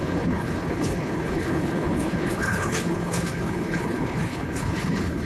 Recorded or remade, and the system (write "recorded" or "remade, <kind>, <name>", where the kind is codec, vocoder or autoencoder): remade, codec, HILCodec